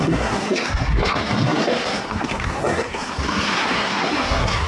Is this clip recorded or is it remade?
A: remade